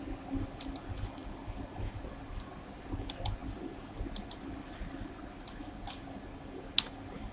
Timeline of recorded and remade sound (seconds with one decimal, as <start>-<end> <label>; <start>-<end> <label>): 0.0-7.3 recorded